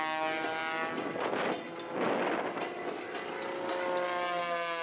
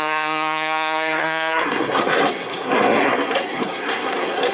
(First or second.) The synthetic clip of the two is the second